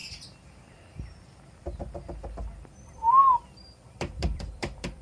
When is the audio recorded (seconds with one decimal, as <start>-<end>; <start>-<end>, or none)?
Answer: 0.0-2.9